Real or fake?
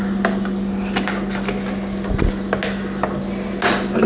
real